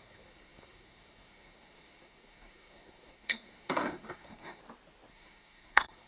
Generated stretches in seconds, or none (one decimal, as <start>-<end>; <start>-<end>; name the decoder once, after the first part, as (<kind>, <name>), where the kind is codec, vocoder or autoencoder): 0.0-4.6 (codec, SNAC); 5.1-6.1